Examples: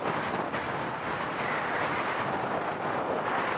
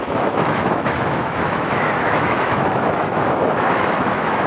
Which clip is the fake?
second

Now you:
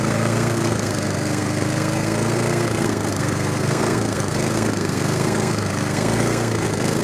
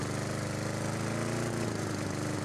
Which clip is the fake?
first